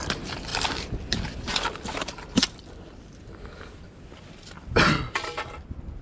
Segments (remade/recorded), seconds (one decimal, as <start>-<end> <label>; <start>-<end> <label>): 0.0-6.0 recorded